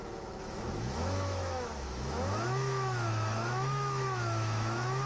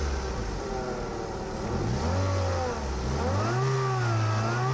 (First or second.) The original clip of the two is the second